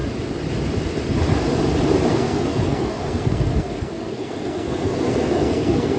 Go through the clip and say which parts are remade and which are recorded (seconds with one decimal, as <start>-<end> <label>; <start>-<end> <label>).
0.0-2.1 recorded; 2.1-6.0 remade